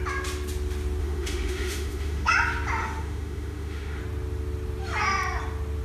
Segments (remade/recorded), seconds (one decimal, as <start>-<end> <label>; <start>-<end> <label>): 0.0-1.0 recorded; 1.0-2.3 remade; 2.3-2.8 recorded; 2.8-4.0 remade; 4.0-5.8 recorded